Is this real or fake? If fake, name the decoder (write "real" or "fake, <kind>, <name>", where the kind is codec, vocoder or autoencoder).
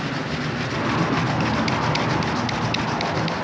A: real